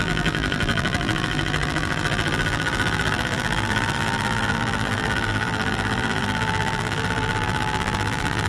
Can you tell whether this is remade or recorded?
remade